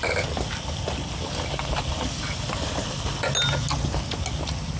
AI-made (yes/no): no